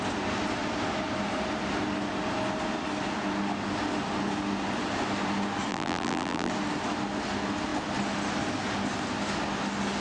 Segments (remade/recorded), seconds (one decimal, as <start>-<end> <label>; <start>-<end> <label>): 0.0-5.7 recorded; 5.7-6.5 remade; 6.5-10.0 recorded